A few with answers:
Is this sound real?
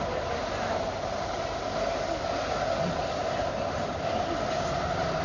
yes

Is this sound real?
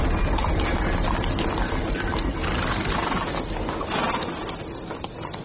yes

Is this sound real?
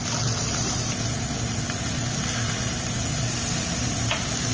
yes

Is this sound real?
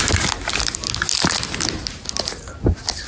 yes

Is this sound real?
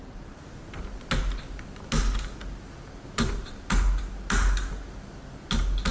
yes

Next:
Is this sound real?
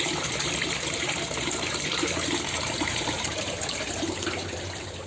no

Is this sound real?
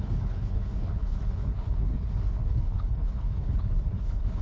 no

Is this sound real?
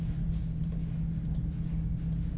yes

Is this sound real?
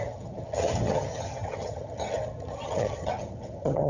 no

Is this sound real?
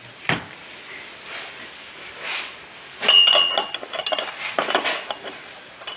yes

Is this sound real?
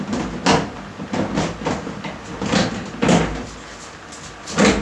yes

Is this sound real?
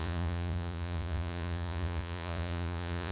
no